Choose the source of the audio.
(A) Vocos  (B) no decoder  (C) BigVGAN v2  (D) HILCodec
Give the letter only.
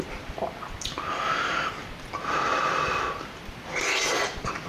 C